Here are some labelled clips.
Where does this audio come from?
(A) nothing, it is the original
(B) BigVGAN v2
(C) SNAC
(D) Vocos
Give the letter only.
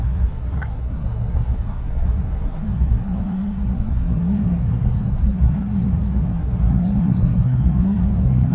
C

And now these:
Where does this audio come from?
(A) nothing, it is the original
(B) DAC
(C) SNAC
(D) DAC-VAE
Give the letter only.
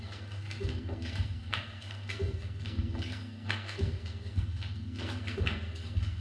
C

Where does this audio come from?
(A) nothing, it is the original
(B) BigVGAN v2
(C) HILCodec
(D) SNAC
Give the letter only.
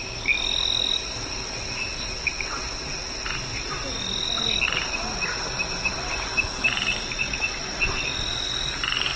A